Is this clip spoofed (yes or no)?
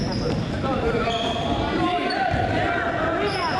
no